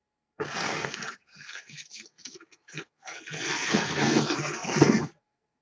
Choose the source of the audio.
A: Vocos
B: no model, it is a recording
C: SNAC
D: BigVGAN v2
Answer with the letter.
C